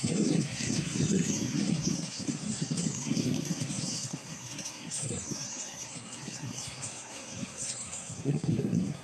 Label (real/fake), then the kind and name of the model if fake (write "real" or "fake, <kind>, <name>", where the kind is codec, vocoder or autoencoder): fake, codec, SNAC